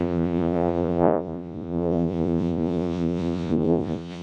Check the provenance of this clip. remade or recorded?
remade